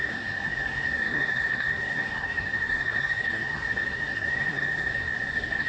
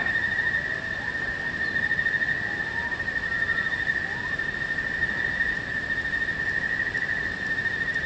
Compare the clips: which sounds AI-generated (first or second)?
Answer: first